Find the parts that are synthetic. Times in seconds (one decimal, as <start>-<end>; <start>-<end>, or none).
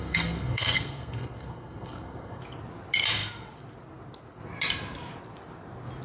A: 0.0-2.4